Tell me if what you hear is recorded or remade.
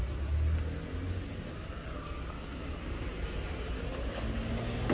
recorded